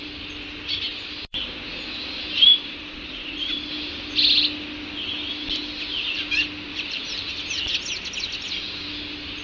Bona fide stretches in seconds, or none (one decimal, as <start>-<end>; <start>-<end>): 0.0-0.9; 1.5-2.5; 3.7-6.7; 7.3-9.4